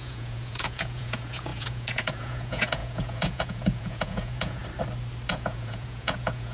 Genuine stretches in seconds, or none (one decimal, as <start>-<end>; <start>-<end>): 4.6-5.3